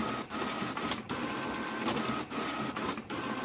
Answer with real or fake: real